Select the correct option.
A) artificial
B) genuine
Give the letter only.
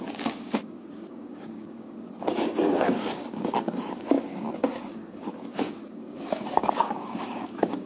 A